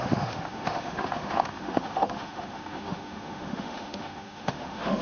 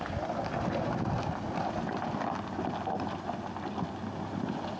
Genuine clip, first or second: second